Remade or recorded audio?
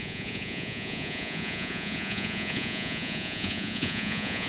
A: remade